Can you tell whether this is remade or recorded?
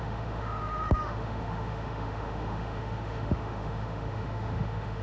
remade